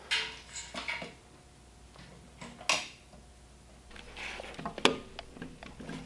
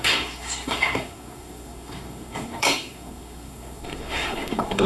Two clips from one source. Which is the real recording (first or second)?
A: first